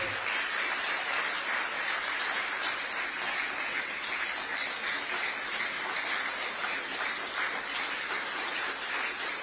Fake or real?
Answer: real